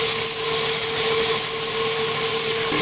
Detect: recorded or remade recorded